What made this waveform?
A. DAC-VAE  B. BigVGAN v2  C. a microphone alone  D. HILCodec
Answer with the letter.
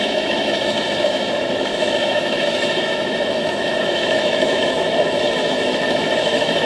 A